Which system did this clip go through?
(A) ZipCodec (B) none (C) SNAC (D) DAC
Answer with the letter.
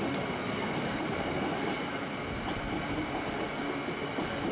B